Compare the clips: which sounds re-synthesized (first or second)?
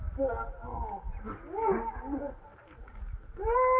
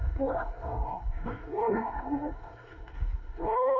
second